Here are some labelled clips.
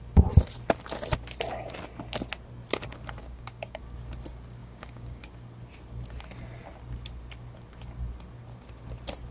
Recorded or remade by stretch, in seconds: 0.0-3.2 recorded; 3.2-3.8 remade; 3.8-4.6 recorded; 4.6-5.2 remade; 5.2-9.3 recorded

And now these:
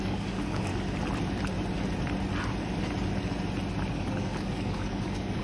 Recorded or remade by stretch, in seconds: 0.0-0.7 remade; 0.7-3.9 recorded; 3.9-5.4 remade

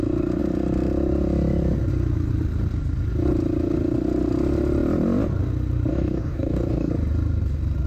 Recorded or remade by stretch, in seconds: 0.0-5.9 recorded; 5.9-6.9 remade; 6.9-7.9 recorded

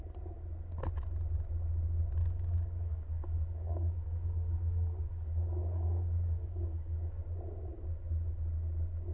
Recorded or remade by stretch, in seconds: 0.0-2.2 recorded; 2.2-7.2 remade; 7.2-9.1 recorded

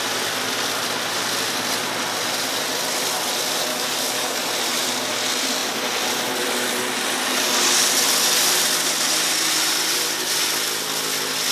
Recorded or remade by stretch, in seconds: 0.0-3.7 recorded; 3.7-4.5 remade; 4.5-11.5 recorded

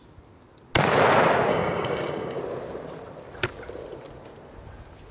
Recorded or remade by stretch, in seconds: 0.0-1.5 recorded; 1.5-2.4 remade; 2.4-5.1 recorded